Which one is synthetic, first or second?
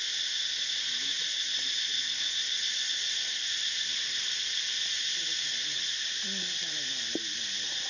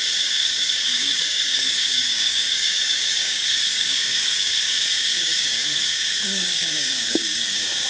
second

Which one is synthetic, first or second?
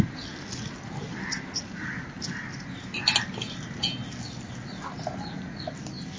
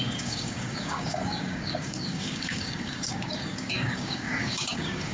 second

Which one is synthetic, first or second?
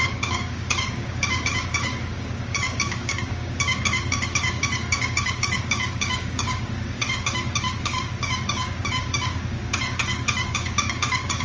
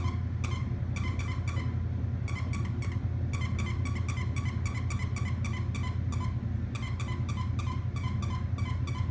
first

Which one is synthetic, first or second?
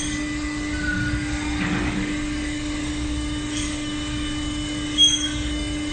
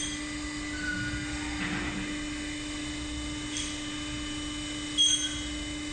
first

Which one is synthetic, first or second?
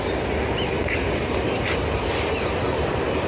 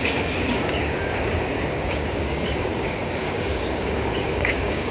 second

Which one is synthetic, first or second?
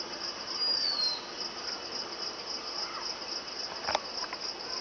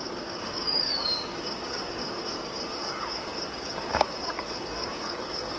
second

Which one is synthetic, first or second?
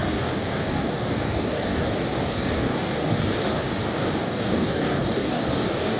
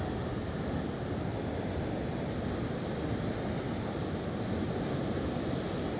first